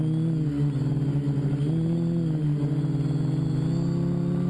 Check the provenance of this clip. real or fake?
real